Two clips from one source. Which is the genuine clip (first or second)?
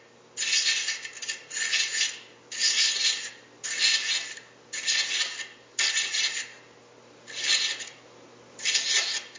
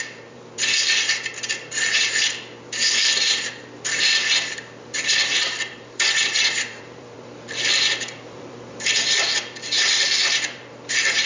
first